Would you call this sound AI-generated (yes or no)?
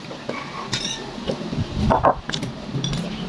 no